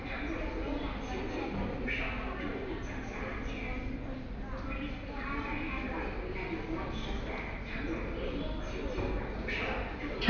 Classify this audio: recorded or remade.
recorded